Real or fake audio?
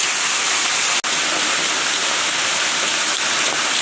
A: real